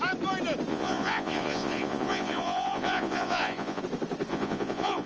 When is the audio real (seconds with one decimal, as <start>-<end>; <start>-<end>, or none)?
0.0-0.7; 3.8-4.3